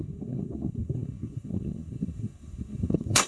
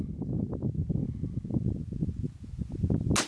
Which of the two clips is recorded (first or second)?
second